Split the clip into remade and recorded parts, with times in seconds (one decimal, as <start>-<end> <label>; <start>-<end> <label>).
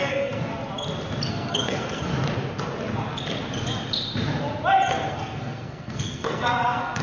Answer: 0.0-0.5 remade; 0.5-1.3 recorded; 1.3-2.1 remade; 2.1-4.9 recorded; 4.9-7.0 remade